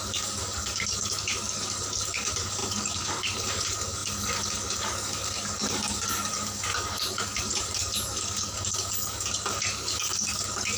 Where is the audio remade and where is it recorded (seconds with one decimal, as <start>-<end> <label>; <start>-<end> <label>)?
0.0-10.8 remade